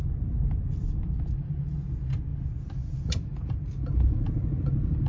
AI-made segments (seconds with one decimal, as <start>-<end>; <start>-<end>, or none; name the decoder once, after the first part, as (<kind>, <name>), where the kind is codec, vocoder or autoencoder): none